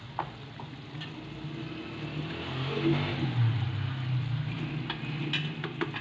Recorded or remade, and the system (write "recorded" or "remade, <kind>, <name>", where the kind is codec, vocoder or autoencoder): recorded